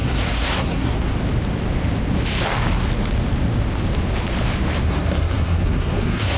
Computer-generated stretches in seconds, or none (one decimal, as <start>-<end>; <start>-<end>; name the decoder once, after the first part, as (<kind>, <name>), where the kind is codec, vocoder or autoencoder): 0.0-1.1 (codec, SNAC); 4.9-6.4